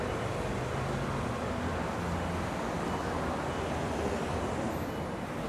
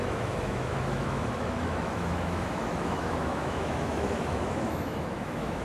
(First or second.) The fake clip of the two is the second